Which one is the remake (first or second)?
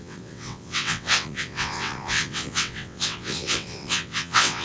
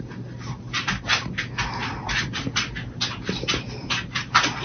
first